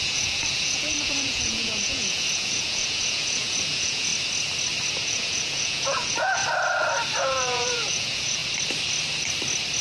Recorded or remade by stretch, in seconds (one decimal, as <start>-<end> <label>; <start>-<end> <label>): 0.0-4.1 remade; 4.1-4.9 recorded; 4.9-6.4 remade; 6.4-7.2 recorded; 7.2-8.4 remade; 8.4-9.8 recorded